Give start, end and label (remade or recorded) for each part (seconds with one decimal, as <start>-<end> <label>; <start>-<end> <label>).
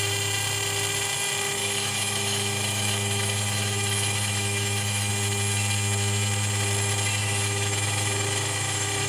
0.0-1.6 recorded; 1.6-5.1 remade; 5.1-7.2 recorded; 7.2-9.1 remade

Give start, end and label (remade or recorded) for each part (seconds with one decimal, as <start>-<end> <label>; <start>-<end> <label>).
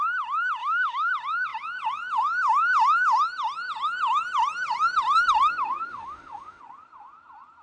0.0-0.6 recorded; 0.6-1.1 remade; 1.1-5.9 recorded; 5.9-6.6 remade; 6.6-7.6 recorded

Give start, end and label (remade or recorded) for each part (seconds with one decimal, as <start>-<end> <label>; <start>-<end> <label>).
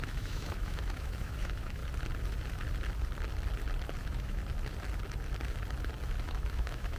0.0-1.8 remade; 1.8-4.0 recorded; 4.0-4.4 remade; 4.4-6.2 recorded; 6.2-7.0 remade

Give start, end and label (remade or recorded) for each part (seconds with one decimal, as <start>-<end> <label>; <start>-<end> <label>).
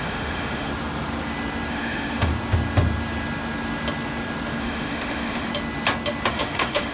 0.0-0.7 remade; 0.7-1.7 recorded; 1.7-2.3 remade; 2.3-4.6 recorded; 4.6-5.5 remade; 5.5-6.3 recorded; 6.3-6.9 remade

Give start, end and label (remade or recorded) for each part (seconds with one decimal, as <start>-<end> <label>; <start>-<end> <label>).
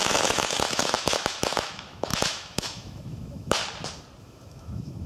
0.0-3.6 remade; 3.6-4.2 recorded; 4.2-5.1 remade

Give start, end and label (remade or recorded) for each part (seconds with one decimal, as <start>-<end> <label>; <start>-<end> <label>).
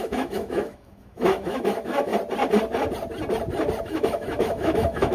0.0-2.1 remade; 2.1-3.8 recorded; 3.8-5.1 remade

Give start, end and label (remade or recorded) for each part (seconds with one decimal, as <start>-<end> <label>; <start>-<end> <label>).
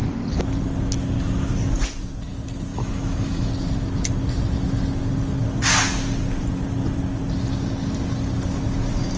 0.0-2.7 recorded; 2.7-3.5 remade; 3.5-9.2 recorded